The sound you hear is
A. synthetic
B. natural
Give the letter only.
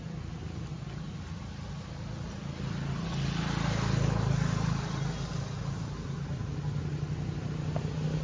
B